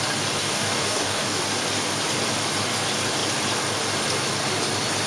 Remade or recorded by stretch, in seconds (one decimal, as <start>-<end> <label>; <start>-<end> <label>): 0.0-0.4 recorded; 0.4-1.4 remade; 1.4-5.1 recorded